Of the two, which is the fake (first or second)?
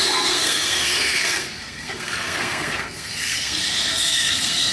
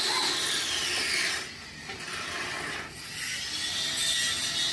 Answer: first